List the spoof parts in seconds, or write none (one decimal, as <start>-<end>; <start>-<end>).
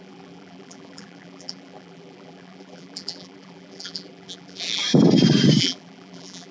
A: 0.0-4.8; 5.6-6.5